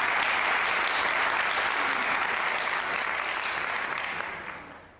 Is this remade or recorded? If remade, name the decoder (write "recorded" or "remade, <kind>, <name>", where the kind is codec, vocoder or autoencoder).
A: recorded